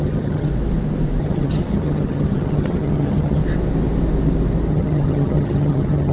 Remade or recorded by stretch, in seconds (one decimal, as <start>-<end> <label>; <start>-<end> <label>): 0.0-0.5 remade; 0.5-1.2 recorded; 1.2-3.4 remade; 3.4-4.7 recorded; 4.7-6.1 remade